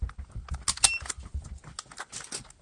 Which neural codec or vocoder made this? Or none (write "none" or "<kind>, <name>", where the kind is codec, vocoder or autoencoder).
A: none